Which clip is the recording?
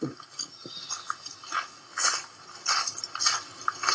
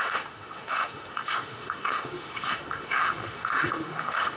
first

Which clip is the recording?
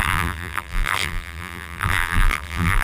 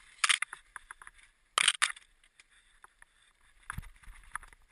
second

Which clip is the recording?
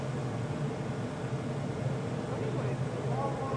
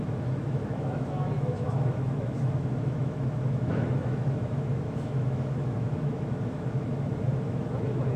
first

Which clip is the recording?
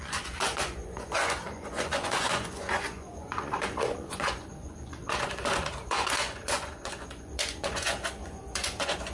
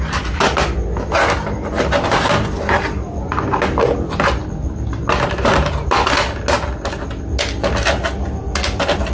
second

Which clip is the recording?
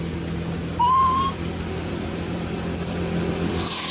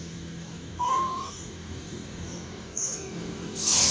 first